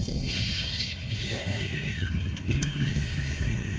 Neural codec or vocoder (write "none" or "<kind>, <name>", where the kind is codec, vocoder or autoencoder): codec, SNAC